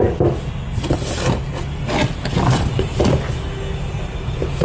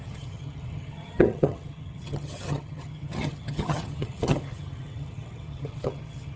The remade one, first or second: second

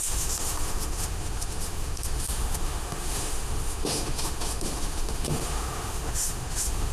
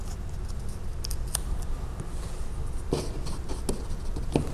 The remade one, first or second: first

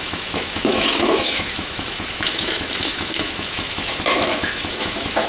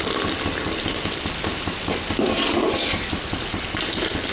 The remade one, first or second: first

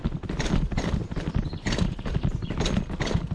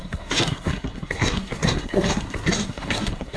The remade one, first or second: second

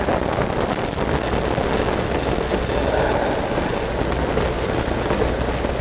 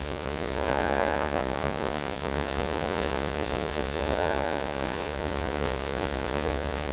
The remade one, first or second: second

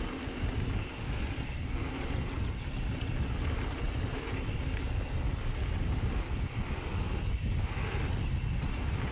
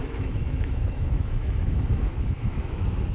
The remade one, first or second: second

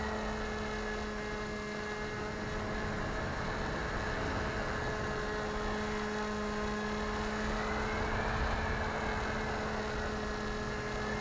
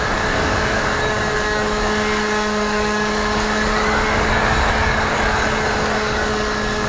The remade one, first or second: second